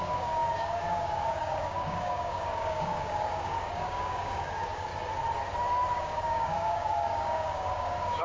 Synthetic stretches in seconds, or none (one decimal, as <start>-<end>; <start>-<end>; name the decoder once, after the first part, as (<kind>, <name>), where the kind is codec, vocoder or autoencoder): 0.0-4.9 (codec, DAC); 5.9-8.2

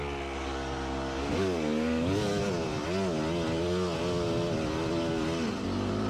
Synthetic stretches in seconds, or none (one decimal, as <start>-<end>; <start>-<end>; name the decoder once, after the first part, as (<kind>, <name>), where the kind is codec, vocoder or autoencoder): 0.4-2.4 (codec, DAC)

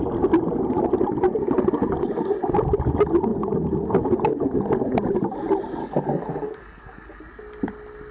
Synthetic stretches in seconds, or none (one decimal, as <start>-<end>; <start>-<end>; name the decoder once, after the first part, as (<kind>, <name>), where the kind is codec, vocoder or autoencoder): 5.8-7.2 (codec, DAC)

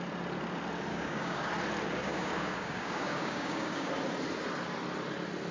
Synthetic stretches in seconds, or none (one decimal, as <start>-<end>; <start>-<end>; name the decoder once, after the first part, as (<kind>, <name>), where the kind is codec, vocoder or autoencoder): 0.9-1.5 (codec, DAC); 2.0-3.9